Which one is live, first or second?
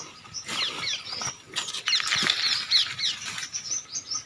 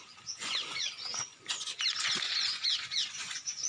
first